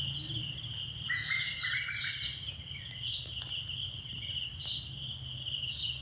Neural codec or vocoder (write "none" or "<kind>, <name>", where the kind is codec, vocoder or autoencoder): none